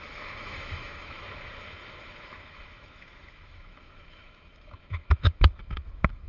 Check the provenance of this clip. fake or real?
fake